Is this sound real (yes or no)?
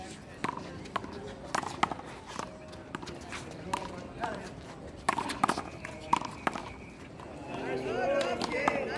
yes